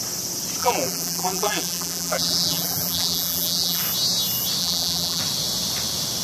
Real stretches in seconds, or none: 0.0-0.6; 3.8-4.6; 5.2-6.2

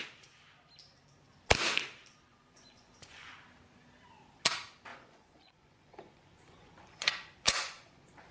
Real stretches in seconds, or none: 0.0-2.3; 3.3-4.9

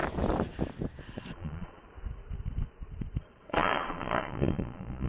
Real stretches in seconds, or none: 0.0-1.0; 1.8-3.2

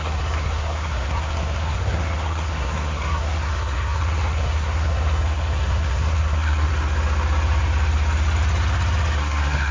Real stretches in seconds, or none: 6.7-9.2

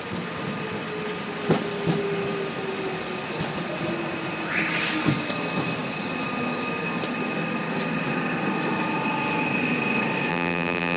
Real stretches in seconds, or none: 0.0-10.3

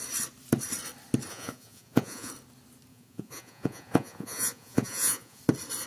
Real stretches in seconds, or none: 0.0-1.3; 2.3-2.9; 5.4-5.9